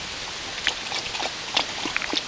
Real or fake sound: real